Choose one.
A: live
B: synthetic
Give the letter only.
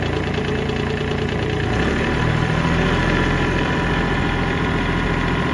B